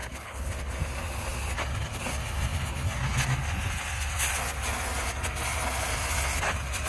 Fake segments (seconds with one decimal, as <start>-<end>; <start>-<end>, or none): 0.0-0.5